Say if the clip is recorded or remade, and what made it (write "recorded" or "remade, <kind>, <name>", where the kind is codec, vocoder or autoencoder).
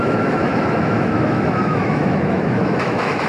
remade, autoencoder, DAC-VAE